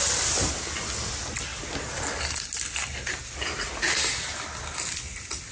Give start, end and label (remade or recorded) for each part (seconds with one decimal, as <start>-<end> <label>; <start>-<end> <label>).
0.0-5.5 recorded